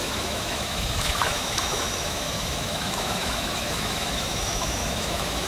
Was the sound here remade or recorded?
remade